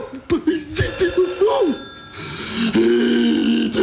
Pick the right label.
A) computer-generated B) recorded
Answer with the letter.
B